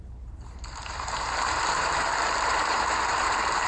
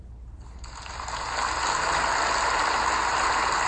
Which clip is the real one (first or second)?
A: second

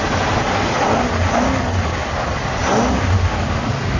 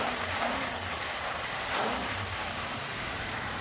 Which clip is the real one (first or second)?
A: first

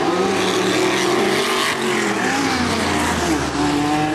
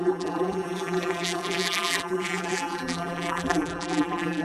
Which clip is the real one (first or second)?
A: first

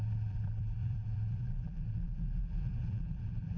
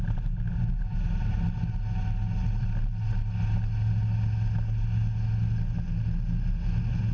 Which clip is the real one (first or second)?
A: second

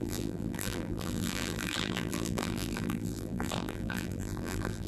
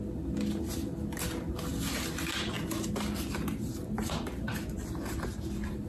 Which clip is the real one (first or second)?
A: second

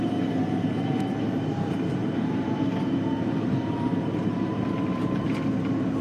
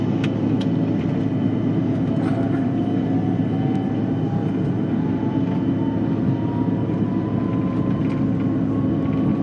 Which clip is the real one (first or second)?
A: second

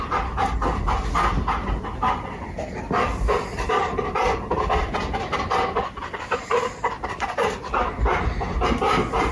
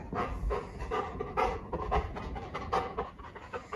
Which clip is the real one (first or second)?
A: first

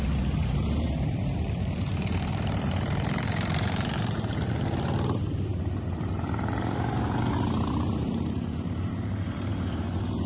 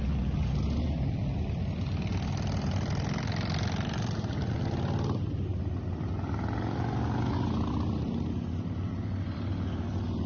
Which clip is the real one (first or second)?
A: second